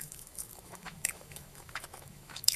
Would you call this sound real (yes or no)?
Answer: no